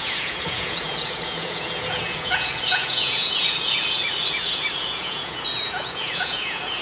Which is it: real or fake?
fake